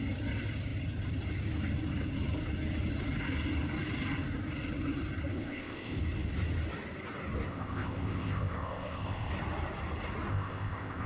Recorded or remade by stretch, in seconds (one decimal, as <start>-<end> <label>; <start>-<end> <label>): 0.0-5.3 recorded; 5.3-6.0 remade; 6.0-7.5 recorded; 7.5-9.3 remade; 9.3-10.3 recorded; 10.3-11.1 remade